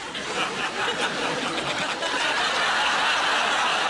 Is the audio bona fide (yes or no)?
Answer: yes